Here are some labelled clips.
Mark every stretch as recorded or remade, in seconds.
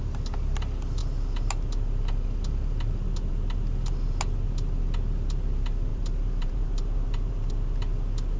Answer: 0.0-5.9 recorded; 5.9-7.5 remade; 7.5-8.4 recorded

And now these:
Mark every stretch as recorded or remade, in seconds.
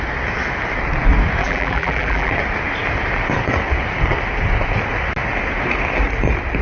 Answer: 0.0-1.4 recorded; 1.4-2.3 remade; 2.3-6.6 recorded